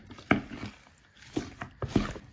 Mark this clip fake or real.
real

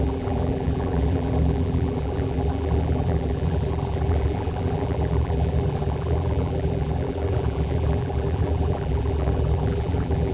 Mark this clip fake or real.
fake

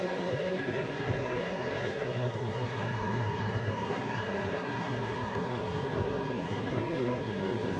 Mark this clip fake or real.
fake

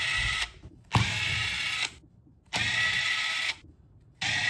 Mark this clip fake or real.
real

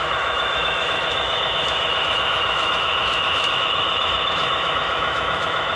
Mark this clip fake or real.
fake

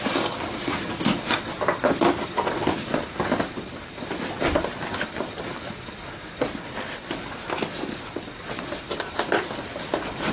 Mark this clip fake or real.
fake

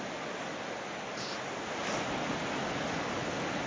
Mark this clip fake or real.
real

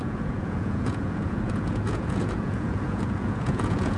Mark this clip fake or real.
fake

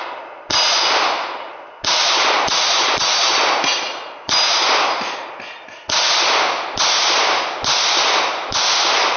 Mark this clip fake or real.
real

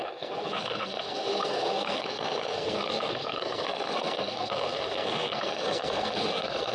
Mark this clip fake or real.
fake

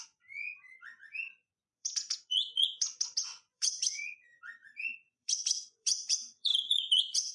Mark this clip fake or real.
fake